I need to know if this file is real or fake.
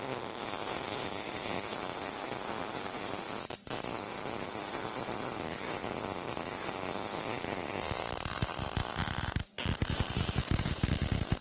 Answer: fake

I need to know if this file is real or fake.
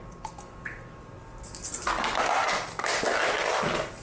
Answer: real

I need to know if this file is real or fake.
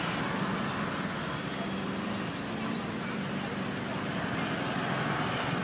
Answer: real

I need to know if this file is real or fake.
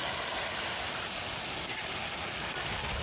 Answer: real